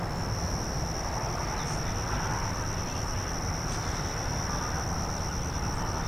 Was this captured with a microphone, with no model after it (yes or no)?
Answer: yes